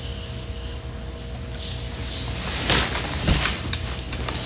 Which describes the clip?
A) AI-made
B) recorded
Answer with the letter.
B